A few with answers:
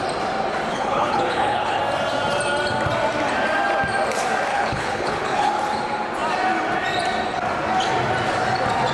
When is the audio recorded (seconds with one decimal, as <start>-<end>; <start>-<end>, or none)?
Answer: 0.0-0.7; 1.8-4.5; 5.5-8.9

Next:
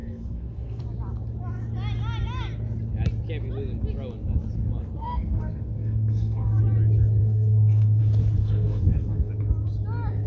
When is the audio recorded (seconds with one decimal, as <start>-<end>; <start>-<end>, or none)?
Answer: 0.8-5.0; 6.6-7.2; 8.0-8.4; 9.3-10.3

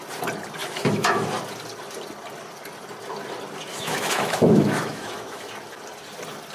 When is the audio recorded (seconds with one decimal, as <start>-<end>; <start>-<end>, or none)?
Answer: 0.0-0.6; 1.3-3.7; 5.5-6.5

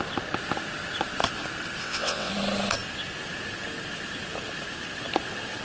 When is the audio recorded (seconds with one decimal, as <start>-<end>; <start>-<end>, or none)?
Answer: 0.0-1.8; 2.3-5.6

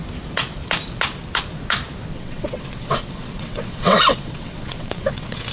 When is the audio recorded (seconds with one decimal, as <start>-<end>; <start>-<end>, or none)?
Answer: 0.0-2.1

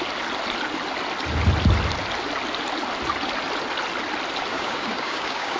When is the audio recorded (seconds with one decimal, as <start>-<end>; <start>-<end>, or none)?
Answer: 0.0-4.5